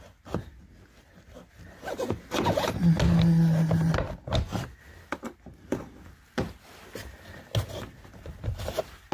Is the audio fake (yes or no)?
no